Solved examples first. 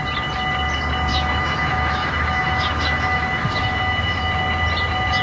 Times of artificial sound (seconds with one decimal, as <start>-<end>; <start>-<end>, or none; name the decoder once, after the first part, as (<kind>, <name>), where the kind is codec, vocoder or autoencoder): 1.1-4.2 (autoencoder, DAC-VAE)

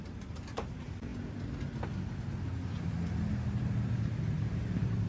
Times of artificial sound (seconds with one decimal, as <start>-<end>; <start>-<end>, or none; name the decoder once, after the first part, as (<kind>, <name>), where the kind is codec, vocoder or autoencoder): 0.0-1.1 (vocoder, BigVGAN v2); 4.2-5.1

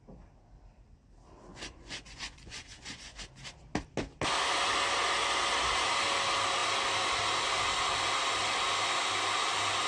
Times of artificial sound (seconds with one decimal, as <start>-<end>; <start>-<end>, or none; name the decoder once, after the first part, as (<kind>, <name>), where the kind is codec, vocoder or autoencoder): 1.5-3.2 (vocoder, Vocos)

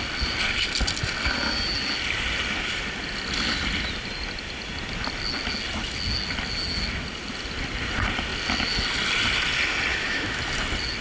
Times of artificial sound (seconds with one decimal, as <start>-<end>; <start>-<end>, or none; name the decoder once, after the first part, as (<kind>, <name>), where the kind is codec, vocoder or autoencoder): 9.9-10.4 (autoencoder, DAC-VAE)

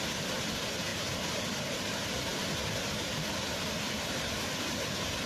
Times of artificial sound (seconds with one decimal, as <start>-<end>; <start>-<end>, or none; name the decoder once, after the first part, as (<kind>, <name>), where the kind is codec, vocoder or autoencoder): 0.9-1.8 (vocoder, BigVGAN v2); 3.3-4.7

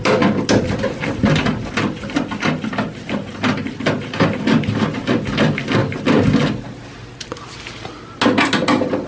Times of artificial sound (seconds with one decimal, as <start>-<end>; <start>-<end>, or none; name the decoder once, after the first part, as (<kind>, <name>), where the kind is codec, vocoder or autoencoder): none

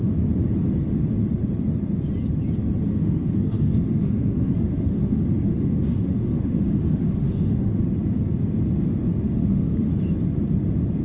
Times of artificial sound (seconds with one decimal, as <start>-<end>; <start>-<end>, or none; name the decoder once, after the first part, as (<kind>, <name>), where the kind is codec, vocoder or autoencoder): 2.9-7.7 (autoencoder, DAC-VAE); 9.1-10.0

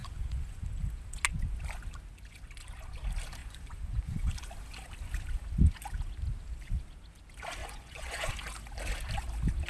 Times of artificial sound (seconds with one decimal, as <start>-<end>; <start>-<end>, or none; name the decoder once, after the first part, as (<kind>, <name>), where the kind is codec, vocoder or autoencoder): 0.0-0.7 (vocoder, Vocos); 3.4-4.4; 7.6-8.3